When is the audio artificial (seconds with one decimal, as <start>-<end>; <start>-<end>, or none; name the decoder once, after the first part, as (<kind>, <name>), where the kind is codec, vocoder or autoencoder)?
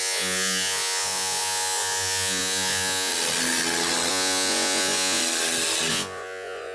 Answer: 0.0-3.1 (vocoder, Vocos); 4.1-5.2; 5.9-6.7